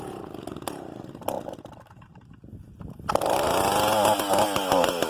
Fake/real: real